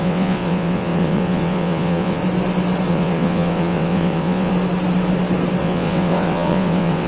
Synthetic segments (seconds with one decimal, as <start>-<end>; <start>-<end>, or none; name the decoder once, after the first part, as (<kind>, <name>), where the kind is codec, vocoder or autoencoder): 0.0-2.2 (vocoder, WaveNeXt); 2.9-4.5; 5.6-7.1